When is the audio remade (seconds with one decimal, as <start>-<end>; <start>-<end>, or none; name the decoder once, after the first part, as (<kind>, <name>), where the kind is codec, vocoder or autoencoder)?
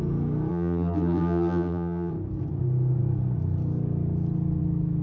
0.5-2.1 (vocoder, BigVGAN v2)